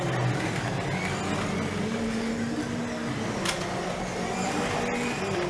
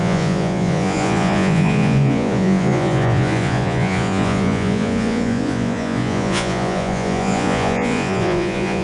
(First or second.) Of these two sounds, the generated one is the second